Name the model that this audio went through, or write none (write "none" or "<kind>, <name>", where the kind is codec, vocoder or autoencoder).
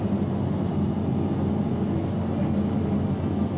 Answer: none